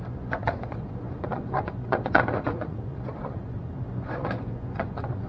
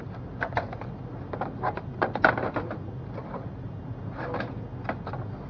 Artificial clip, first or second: first